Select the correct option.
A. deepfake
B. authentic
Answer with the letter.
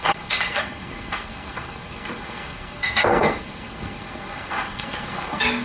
A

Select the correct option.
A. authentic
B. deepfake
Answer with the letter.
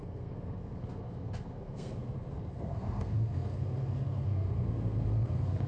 B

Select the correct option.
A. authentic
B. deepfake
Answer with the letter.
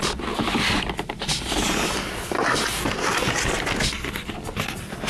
A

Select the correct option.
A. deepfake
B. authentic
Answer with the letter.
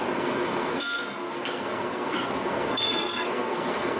A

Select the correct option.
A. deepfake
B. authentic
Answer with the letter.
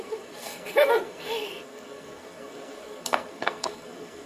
A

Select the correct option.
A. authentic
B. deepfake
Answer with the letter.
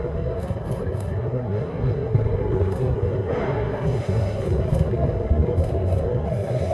B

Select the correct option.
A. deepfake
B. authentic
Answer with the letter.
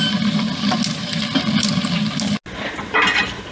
B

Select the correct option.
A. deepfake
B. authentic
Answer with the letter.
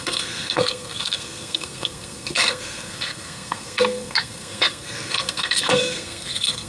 A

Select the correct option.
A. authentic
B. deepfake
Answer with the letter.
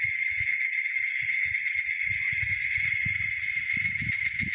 A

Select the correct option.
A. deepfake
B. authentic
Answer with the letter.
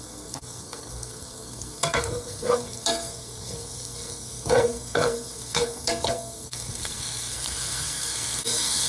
A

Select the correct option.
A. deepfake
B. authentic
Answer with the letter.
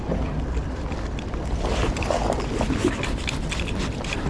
B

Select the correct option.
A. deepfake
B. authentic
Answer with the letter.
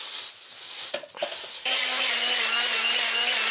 B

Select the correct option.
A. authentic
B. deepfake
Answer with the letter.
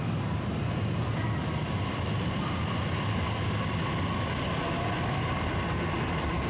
A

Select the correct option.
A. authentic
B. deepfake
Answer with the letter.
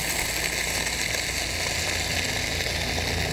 A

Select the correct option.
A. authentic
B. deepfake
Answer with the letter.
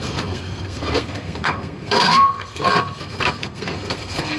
B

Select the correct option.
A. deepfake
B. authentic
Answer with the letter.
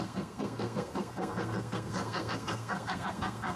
A